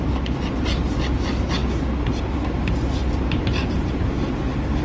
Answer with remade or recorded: recorded